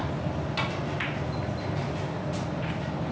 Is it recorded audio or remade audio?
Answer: recorded